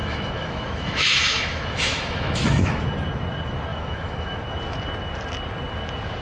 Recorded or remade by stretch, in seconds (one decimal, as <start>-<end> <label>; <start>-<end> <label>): 0.0-2.8 remade; 2.8-3.7 recorded; 3.7-4.4 remade; 4.4-6.2 recorded